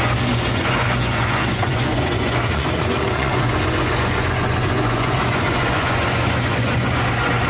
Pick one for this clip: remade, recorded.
remade